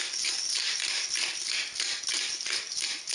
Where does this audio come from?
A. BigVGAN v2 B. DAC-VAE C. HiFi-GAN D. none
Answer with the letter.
D